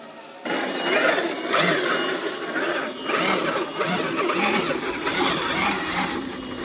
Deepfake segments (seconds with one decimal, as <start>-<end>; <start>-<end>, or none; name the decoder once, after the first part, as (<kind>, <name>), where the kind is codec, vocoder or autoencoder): 5.1-6.1 (vocoder, BigVGAN v2)